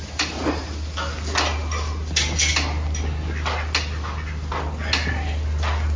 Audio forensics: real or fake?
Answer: real